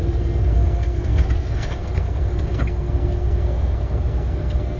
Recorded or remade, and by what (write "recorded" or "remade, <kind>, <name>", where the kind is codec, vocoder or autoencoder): remade, codec, SNAC